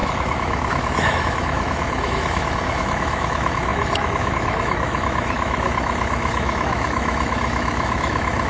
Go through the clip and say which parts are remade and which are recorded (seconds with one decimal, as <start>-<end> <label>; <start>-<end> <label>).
0.0-8.5 remade